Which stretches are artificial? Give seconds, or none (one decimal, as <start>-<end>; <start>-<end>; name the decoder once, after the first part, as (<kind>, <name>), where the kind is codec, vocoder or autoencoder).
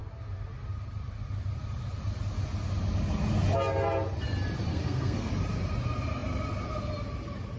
4.7-5.3 (codec, SNAC)